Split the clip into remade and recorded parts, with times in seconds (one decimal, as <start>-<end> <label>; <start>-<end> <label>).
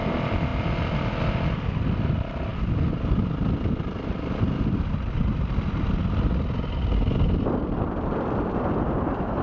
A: 0.0-9.4 recorded